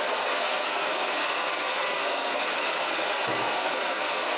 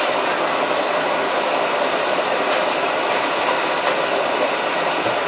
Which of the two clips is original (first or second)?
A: second